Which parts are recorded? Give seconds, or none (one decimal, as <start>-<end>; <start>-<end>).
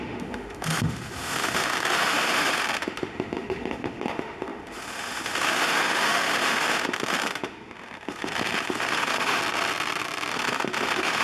9.4-10.3